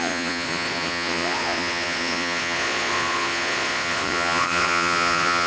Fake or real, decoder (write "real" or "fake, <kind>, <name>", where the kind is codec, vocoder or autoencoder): fake, vocoder, Vocos